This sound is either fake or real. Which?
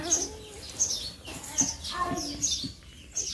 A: real